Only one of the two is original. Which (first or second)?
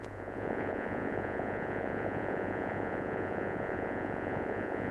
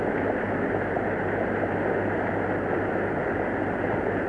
second